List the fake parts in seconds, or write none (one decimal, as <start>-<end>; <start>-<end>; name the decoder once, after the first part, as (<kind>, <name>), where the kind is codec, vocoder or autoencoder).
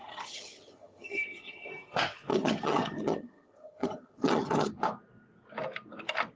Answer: 0.0-1.7 (vocoder, HiFi-GAN); 2.3-4.7